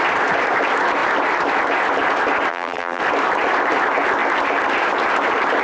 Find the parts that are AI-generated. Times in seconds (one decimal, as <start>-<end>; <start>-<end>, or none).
2.5-3.0